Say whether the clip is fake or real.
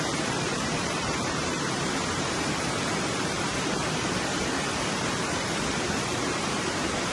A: fake